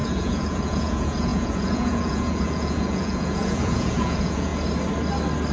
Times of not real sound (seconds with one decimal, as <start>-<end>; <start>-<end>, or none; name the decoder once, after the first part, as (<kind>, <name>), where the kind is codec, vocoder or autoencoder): 0.0-4.5 (vocoder, Vocos)